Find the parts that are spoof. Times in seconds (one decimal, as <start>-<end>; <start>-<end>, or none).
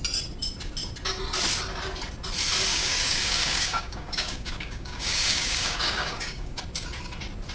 2.7-6.6